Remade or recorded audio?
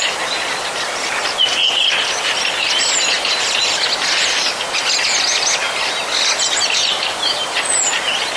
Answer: recorded